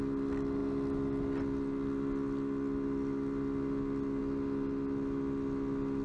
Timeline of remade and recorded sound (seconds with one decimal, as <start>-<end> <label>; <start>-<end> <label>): 0.0-6.0 recorded